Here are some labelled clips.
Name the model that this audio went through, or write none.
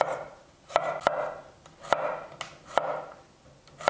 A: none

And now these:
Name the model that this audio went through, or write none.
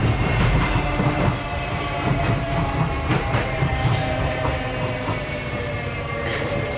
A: vocoder, BigVGAN v2